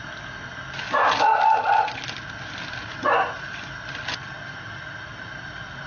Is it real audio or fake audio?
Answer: real